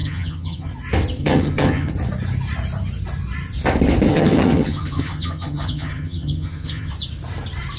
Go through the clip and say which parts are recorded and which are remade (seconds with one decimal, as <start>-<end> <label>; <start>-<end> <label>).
0.0-0.7 remade; 0.7-1.2 recorded; 1.2-1.9 remade; 1.9-4.1 recorded; 4.1-6.9 remade; 6.9-7.8 recorded